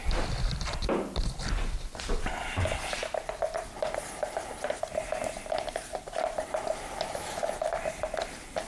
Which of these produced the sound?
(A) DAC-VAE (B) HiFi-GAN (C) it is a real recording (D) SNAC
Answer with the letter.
C